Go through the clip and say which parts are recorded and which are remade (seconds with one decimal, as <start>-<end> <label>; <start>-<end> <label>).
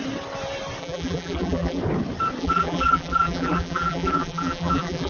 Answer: 0.0-0.8 recorded; 0.8-1.8 remade; 1.8-2.4 recorded; 2.4-5.1 remade